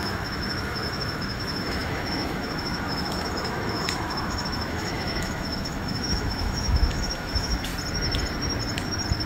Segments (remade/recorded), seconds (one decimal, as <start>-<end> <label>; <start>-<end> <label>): 0.0-7.7 remade; 7.7-9.3 recorded